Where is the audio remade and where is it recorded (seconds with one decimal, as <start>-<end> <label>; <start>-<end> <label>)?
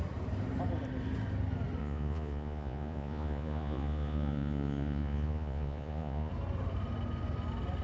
0.0-1.8 recorded; 1.8-6.3 remade; 6.3-7.8 recorded